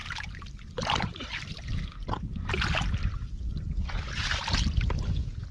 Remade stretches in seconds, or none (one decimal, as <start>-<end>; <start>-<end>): 0.0-2.5